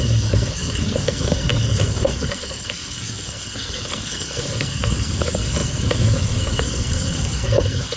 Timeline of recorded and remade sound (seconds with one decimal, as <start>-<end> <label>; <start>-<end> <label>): 0.0-8.0 remade